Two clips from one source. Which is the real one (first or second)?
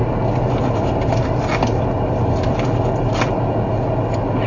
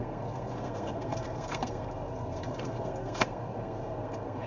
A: first